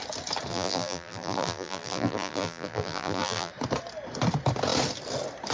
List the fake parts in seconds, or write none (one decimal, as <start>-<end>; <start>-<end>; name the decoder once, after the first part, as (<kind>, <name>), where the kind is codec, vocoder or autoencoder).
0.5-3.5 (vocoder, BigVGAN v2)